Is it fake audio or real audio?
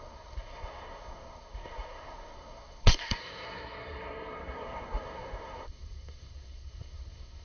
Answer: fake